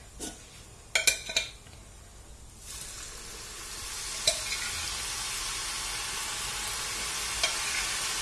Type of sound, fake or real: real